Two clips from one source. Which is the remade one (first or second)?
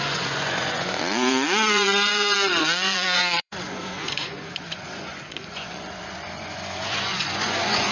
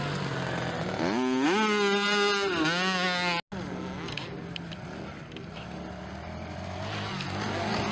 first